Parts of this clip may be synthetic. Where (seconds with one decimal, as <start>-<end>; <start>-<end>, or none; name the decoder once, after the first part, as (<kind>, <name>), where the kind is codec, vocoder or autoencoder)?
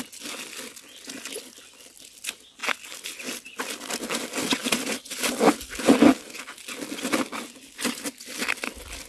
4.6-5.3 (vocoder, BigVGAN v2)